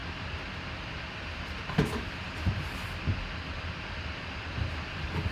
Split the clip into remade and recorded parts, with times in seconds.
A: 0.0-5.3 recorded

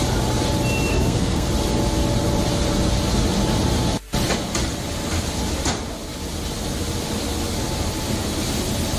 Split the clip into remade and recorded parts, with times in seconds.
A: 0.0-0.9 recorded; 0.9-1.5 remade; 1.5-9.0 recorded